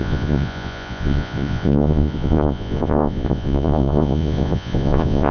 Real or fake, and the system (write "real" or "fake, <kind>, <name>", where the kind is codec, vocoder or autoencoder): fake, vocoder, Vocos